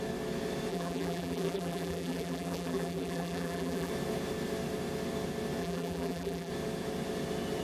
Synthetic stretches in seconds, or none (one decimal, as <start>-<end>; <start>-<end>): 0.7-3.9; 5.6-6.5